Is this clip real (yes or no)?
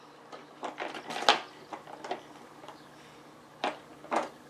yes